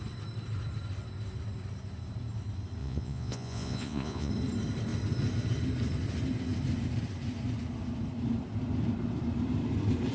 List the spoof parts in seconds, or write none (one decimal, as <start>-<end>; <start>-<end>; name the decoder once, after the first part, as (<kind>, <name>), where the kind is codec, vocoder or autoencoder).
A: 2.8-4.3 (vocoder, Vocos)